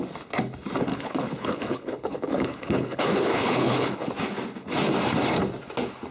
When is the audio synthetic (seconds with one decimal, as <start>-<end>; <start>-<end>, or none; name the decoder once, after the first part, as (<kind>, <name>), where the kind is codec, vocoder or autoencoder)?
0.9-4.1 (codec, HILCodec)